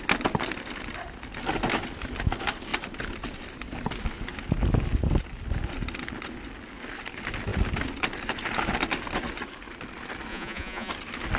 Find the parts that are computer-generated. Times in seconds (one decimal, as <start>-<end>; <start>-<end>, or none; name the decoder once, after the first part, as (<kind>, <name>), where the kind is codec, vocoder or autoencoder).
10.3-10.9 (vocoder, Vocos)